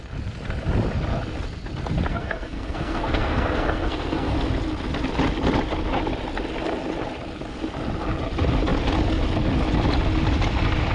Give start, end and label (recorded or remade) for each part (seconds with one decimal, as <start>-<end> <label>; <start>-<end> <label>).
0.0-2.1 recorded; 2.1-4.3 remade; 4.3-10.9 recorded